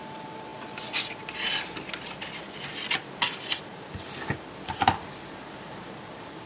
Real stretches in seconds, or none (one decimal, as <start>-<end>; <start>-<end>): 0.0-3.7